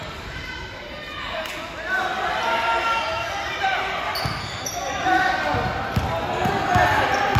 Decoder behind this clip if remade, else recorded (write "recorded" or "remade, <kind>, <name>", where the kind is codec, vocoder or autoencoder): recorded